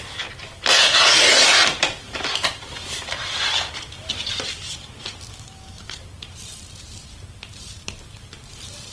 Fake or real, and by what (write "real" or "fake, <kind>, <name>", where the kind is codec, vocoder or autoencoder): fake, vocoder, BigVGAN v2